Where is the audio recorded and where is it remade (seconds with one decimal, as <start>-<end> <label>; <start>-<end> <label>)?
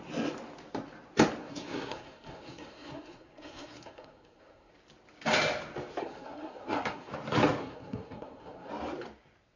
0.0-1.4 recorded; 1.4-4.7 remade; 4.7-6.0 recorded; 6.0-7.1 remade; 7.1-7.6 recorded; 7.6-8.7 remade; 8.7-9.6 recorded